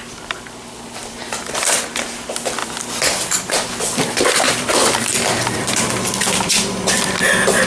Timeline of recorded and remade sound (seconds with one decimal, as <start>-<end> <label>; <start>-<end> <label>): 0.0-1.0 recorded; 1.0-1.8 remade; 1.8-2.6 recorded; 2.6-7.2 remade; 7.2-7.7 recorded